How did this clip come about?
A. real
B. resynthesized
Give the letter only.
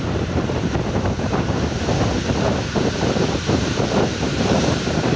B